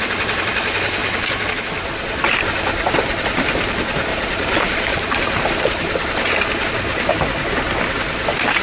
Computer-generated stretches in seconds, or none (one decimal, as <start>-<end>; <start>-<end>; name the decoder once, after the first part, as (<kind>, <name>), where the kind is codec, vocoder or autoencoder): 1.0-1.5 (vocoder, BigVGAN v2); 4.1-5.7